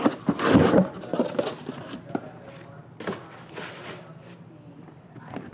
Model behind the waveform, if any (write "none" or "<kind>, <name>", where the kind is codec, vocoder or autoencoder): none